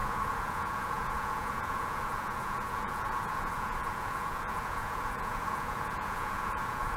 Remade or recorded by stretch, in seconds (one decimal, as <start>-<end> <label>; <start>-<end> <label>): 0.0-7.0 remade